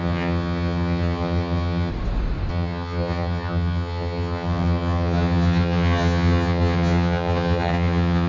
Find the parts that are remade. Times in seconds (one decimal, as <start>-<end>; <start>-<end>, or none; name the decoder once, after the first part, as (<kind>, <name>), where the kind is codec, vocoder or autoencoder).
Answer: 0.0-1.9 (vocoder, HiFi-GAN); 2.5-8.3